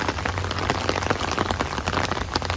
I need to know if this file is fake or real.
real